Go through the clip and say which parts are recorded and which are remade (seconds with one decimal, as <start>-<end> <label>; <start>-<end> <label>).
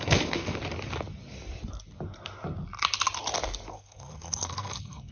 0.0-0.6 remade; 0.6-3.7 recorded; 3.7-5.1 remade